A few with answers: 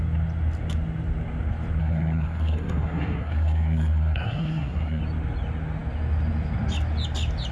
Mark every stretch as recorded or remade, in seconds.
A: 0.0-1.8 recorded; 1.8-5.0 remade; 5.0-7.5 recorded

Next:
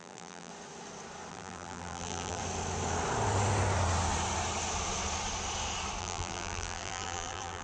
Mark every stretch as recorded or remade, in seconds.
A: 0.0-0.5 remade; 0.5-1.3 recorded; 1.3-2.4 remade; 2.4-6.0 recorded; 6.0-7.6 remade

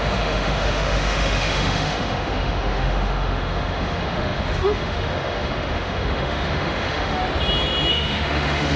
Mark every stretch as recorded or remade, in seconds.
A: 0.0-7.2 remade; 7.2-7.9 recorded; 7.9-8.8 remade

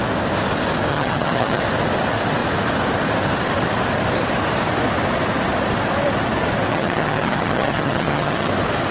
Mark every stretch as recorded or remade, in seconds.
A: 0.0-0.9 recorded; 0.9-1.6 remade; 1.6-6.7 recorded; 6.7-8.5 remade; 8.5-8.9 recorded

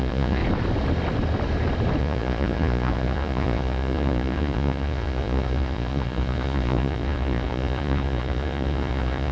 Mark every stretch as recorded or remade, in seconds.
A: 0.0-0.4 remade; 0.4-2.0 recorded; 2.0-9.3 remade

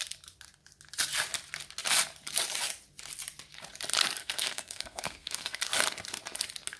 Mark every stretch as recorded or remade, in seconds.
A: 0.0-4.2 recorded; 4.2-5.6 remade; 5.6-6.8 recorded